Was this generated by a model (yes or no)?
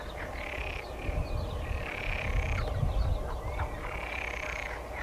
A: no